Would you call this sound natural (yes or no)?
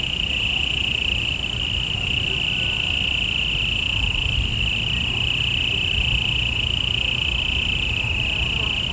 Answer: yes